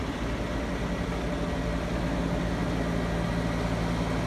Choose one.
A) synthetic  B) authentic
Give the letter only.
B